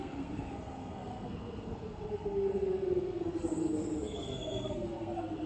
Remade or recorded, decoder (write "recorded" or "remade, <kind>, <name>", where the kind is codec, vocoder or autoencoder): remade, codec, SNAC